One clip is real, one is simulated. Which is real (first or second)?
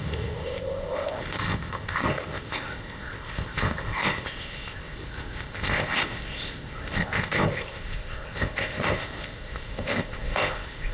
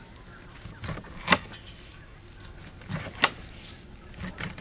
second